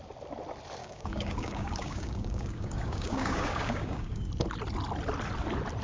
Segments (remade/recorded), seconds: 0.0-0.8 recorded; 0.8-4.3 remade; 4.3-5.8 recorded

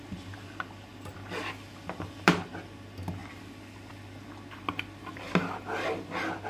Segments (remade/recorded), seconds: 0.0-0.9 recorded; 0.9-2.5 remade; 2.5-3.2 recorded; 3.2-3.9 remade; 3.9-6.5 recorded

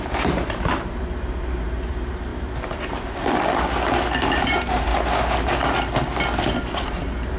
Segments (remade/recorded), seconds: 0.0-2.3 remade; 2.3-4.3 recorded; 4.3-4.9 remade; 4.9-6.6 recorded; 6.6-7.4 remade

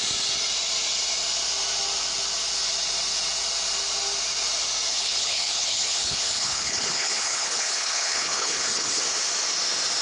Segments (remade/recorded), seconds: 0.0-4.9 recorded; 4.9-9.0 remade; 9.0-10.0 recorded